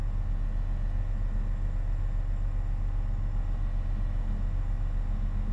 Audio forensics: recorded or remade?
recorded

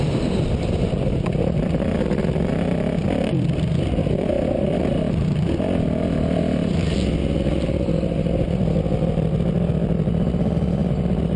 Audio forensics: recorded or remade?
recorded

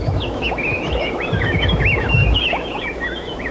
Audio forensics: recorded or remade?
remade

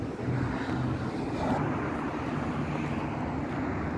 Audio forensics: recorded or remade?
recorded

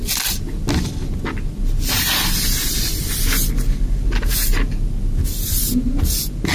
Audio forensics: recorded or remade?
recorded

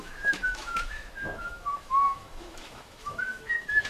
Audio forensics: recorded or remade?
remade